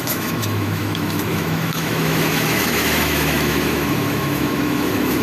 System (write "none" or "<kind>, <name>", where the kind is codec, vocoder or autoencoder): autoencoder, DAC-VAE